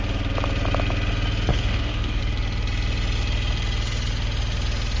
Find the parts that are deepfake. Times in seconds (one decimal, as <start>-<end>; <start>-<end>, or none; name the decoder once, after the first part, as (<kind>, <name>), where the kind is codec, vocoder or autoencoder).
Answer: 1.5-2.2 (codec, DAC)